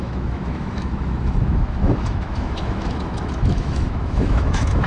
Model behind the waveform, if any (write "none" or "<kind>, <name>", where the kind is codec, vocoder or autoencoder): autoencoder, DAC-VAE